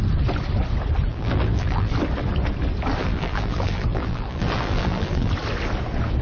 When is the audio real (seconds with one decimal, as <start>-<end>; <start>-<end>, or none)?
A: 0.0-1.1; 1.9-3.0; 5.3-6.2